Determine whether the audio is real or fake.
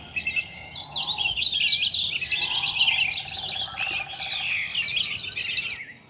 real